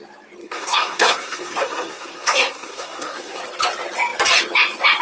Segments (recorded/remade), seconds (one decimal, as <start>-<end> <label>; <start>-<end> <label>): 0.0-0.4 recorded; 0.4-3.4 remade; 3.4-5.0 recorded